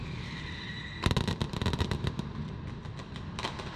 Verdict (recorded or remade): recorded